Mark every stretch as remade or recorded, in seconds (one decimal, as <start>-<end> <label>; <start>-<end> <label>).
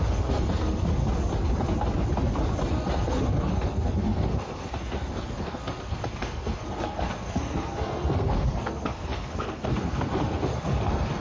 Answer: 0.0-1.0 remade; 1.0-2.7 recorded; 2.7-11.2 remade